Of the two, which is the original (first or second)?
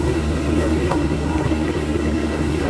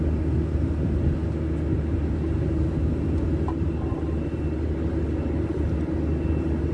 second